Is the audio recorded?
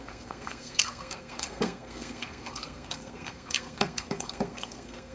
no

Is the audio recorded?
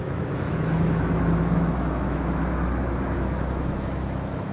no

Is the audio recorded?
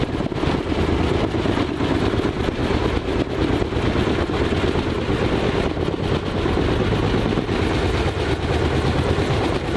yes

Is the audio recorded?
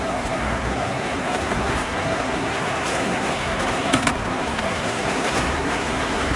no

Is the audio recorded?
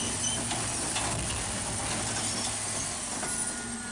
yes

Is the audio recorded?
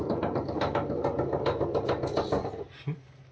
yes